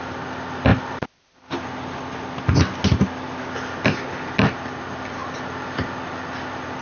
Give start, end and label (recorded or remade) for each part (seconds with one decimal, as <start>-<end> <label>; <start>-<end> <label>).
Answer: 0.0-6.8 recorded